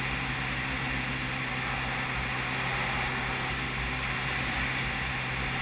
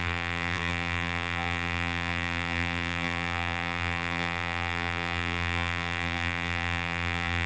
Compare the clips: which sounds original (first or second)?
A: first